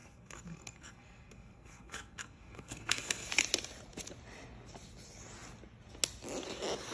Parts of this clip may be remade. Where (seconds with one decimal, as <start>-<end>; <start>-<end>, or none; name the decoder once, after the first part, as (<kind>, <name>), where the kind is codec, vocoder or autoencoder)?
0.0-3.3 (codec, SNAC)